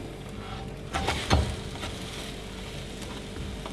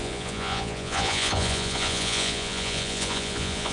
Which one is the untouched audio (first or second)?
first